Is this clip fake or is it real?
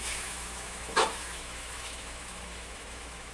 fake